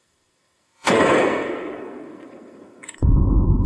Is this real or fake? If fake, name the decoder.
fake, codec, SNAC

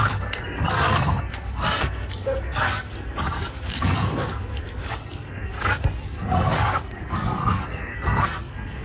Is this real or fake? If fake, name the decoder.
fake, codec, SNAC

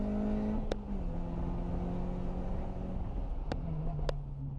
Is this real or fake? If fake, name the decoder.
real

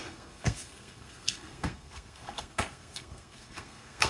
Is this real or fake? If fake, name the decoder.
fake, codec, SNAC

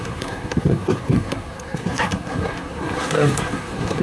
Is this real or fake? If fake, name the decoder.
fake, codec, SNAC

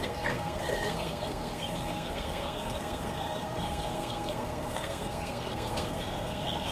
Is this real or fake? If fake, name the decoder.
fake, codec, SNAC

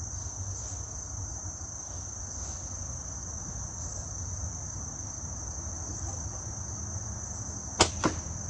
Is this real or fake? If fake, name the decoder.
real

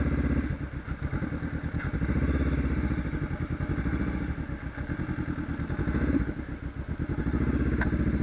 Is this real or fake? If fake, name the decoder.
real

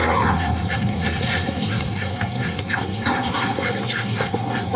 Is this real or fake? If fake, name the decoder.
fake, codec, SNAC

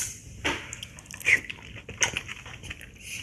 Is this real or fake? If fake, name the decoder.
real